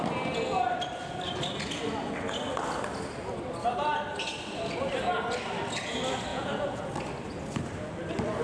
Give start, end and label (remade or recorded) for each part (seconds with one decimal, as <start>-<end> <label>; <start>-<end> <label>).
0.0-6.3 recorded; 6.3-6.9 remade; 6.9-8.4 recorded